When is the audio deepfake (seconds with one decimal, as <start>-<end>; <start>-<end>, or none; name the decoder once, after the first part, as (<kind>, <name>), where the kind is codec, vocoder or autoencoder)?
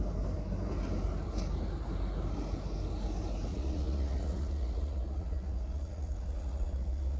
3.5-7.2 (vocoder, Vocos)